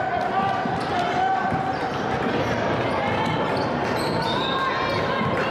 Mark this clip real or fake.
real